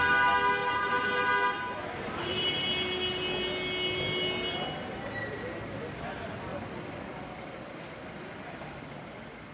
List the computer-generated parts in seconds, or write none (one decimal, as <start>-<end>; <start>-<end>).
6.5-8.8

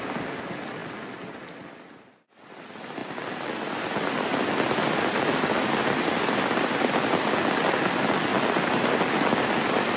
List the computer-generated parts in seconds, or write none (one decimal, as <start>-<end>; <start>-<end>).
none

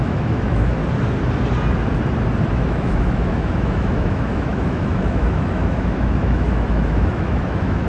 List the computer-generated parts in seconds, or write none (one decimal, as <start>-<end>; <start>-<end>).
0.0-0.8; 2.5-7.9

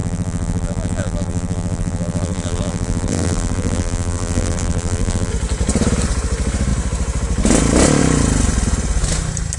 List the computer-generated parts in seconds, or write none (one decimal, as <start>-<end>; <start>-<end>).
0.0-5.3

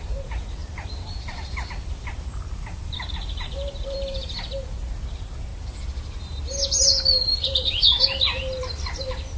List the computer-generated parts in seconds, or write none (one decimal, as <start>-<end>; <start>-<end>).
0.6-4.4

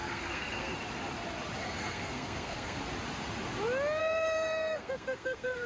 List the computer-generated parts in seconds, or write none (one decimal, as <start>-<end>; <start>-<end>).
0.0-0.7; 1.8-2.8; 4.0-5.7

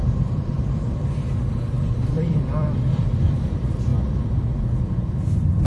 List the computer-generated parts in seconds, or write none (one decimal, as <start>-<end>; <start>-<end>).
0.0-3.4

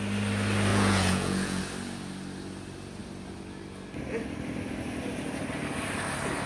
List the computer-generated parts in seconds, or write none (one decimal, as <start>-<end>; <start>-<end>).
0.7-1.6